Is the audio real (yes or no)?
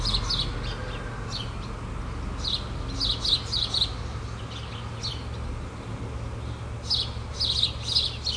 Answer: yes